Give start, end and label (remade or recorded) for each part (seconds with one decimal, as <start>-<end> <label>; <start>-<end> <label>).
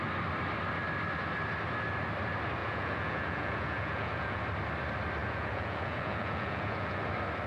0.0-2.6 recorded; 2.6-4.4 remade; 4.4-5.2 recorded; 5.2-7.0 remade; 7.0-7.5 recorded